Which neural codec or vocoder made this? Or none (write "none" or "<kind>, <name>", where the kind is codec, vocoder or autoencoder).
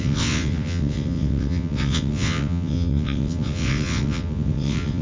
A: vocoder, WaveNeXt